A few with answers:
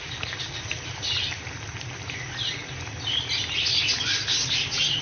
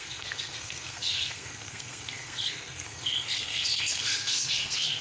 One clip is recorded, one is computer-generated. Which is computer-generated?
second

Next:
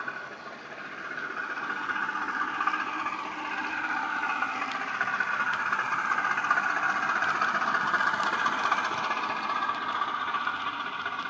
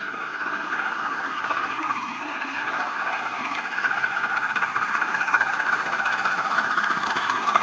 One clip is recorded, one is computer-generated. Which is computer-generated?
second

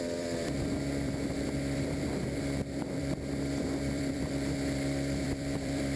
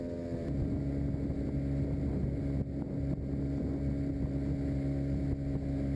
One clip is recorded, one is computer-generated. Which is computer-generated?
first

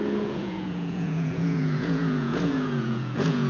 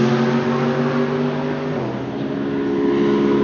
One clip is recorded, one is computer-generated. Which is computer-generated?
first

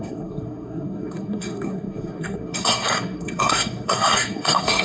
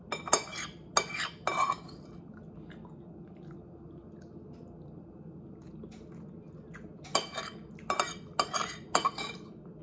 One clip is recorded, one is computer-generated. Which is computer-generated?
first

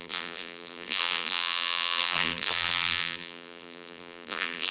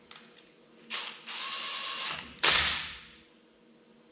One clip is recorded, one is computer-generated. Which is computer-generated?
first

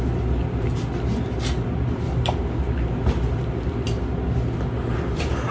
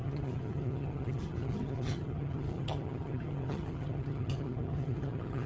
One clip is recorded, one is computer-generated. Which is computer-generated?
second